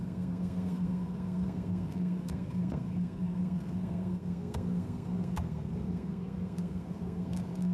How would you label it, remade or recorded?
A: remade